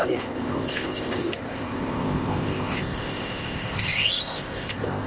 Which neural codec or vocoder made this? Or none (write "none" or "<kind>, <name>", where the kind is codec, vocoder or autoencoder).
codec, ZipCodec